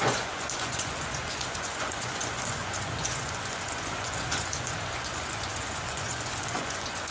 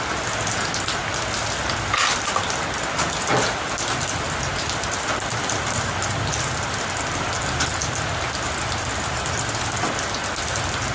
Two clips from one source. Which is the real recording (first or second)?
second